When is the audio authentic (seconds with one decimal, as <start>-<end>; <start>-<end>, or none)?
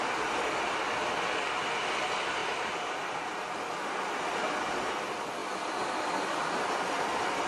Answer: 0.0-2.4; 4.2-5.4; 6.9-7.5